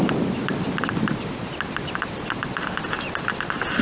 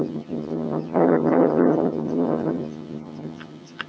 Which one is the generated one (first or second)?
second